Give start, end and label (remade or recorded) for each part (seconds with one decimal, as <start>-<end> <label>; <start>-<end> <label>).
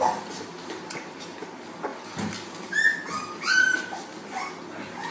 0.0-0.5 recorded; 0.5-1.4 remade; 1.4-5.1 recorded